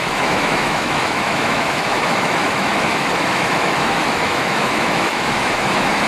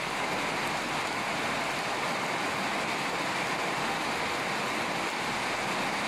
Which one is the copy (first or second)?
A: first